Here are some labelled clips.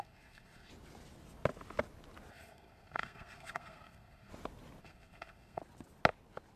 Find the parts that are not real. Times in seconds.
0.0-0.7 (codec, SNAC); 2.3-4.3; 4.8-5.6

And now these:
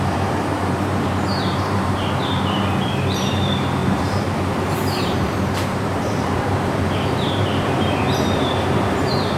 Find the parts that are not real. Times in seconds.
0.0-9.4 (vocoder, BigVGAN v2)

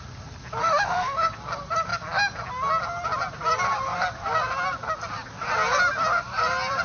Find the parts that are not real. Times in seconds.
0.6-1.3 (autoencoder, DAC-VAE)

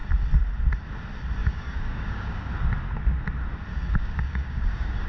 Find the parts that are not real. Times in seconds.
1.4-2.5 (codec, DAC); 3.7-5.1

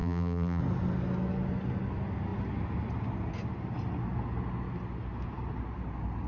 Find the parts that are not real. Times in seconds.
0.0-0.6 (vocoder, BigVGAN v2)

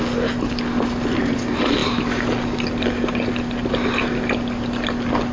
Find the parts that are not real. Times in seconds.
none